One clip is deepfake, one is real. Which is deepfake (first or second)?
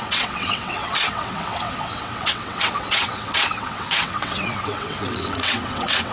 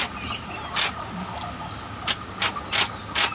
first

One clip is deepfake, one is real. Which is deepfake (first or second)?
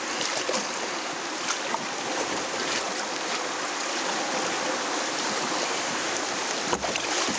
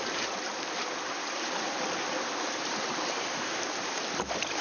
second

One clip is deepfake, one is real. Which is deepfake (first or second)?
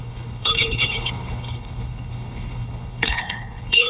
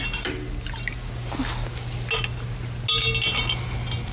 first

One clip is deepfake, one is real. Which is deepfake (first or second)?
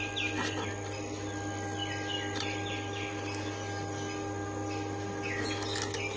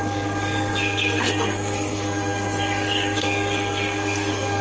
second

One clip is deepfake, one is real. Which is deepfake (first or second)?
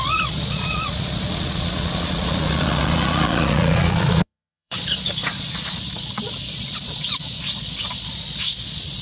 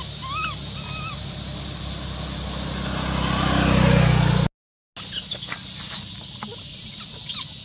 first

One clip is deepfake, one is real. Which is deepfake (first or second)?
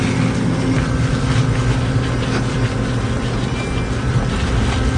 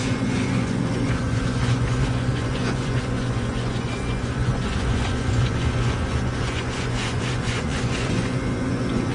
second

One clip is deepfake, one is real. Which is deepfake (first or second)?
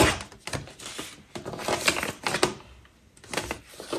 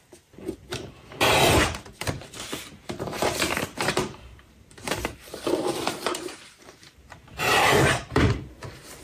second